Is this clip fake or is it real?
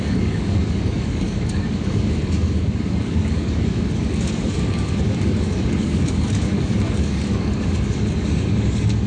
fake